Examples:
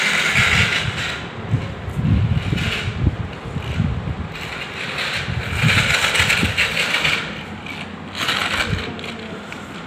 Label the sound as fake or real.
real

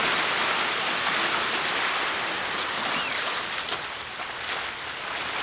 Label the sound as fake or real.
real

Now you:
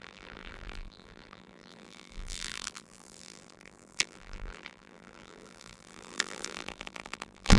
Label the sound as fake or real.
fake